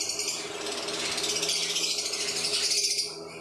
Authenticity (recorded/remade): recorded